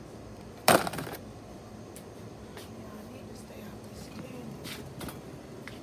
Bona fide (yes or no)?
no